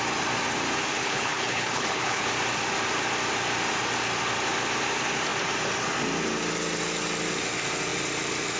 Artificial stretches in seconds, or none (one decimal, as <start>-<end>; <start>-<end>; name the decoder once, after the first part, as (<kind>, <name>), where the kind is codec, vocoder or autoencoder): 1.0-2.3 (codec, HILCodec)